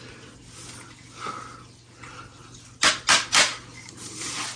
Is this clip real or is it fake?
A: real